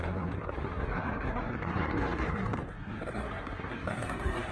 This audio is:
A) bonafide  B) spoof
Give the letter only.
B